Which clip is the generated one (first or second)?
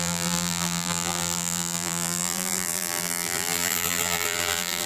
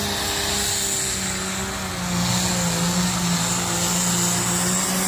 first